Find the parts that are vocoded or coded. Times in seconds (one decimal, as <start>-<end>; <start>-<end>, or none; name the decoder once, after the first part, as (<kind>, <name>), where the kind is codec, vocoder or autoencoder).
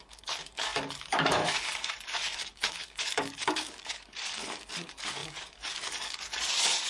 0.0-6.9 (codec, DAC)